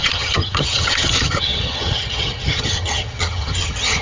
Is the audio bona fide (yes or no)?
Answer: no